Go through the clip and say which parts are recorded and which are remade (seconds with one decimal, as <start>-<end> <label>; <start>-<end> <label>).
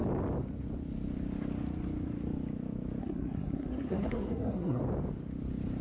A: 0.0-3.0 recorded; 3.0-4.8 remade; 4.8-5.8 recorded